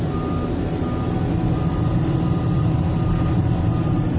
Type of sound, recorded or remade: recorded